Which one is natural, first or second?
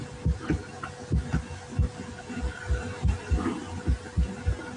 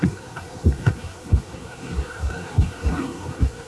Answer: first